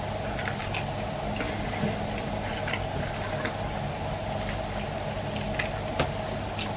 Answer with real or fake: real